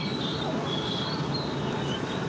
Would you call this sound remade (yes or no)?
no